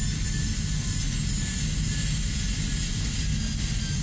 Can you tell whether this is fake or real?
real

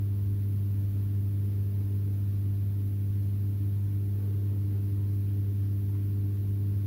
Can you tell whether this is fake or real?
real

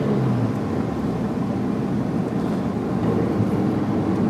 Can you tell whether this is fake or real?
real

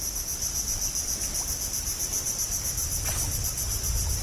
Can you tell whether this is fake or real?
real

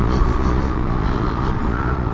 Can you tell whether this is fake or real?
fake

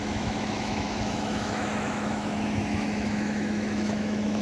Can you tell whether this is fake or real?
fake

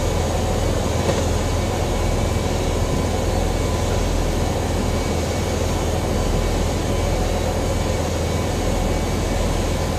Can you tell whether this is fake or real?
real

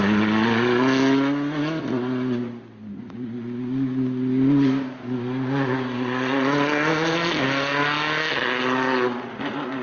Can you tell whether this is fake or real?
real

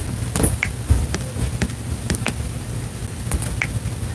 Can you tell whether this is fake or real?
real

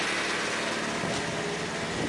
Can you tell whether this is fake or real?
real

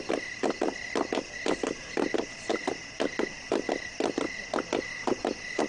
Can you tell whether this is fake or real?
real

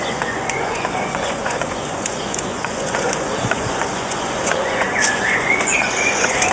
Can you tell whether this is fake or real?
fake